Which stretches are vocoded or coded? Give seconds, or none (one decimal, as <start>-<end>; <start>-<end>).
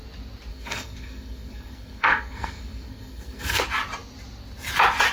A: 0.5-3.6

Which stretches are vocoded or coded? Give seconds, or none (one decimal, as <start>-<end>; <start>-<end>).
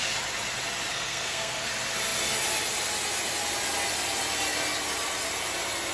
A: 0.9-1.7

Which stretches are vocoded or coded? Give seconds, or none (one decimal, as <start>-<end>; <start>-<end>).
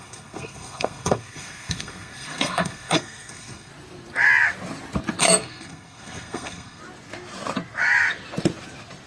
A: 0.0-3.7; 5.2-6.8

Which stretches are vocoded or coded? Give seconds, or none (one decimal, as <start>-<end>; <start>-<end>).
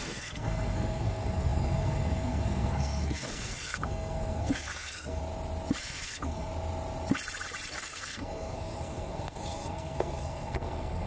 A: 0.0-5.2; 5.8-6.5; 7.7-11.1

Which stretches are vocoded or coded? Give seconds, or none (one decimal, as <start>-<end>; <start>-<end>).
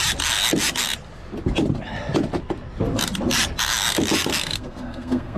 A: 4.3-5.4